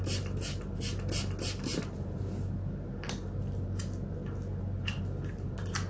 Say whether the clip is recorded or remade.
recorded